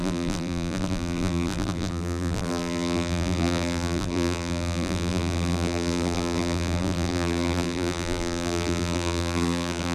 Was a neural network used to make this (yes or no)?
yes